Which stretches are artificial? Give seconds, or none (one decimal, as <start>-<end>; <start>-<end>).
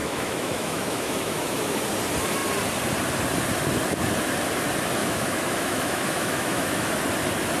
0.0-1.8; 5.0-7.0